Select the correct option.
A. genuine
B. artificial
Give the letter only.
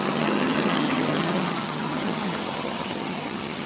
B